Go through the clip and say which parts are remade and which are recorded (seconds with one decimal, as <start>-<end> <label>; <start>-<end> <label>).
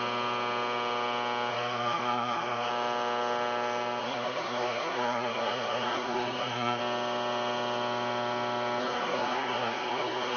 0.0-1.5 recorded; 1.5-2.7 remade; 2.7-4.0 recorded; 4.0-6.8 remade; 6.8-8.8 recorded; 8.8-10.4 remade